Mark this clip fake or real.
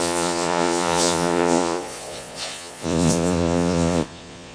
fake